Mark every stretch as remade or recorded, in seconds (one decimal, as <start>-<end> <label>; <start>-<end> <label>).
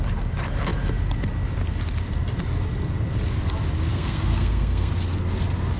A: 0.0-3.9 recorded; 3.9-4.9 remade; 4.9-5.8 recorded